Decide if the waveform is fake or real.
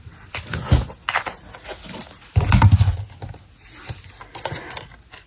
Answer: real